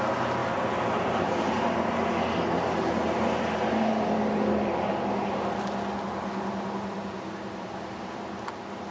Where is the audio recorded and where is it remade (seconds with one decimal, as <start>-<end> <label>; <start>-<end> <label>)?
0.0-8.9 recorded